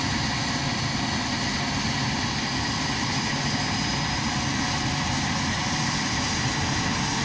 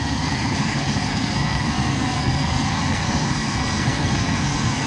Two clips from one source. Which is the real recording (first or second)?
first